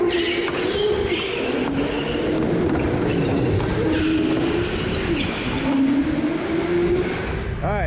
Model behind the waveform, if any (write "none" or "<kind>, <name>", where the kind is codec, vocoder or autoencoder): none